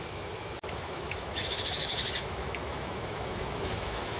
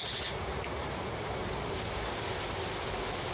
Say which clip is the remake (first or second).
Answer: first